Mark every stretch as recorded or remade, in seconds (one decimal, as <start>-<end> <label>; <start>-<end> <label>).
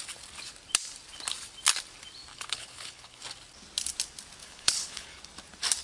0.0-2.3 recorded; 2.3-3.2 remade; 3.2-4.4 recorded; 4.4-5.2 remade; 5.2-5.8 recorded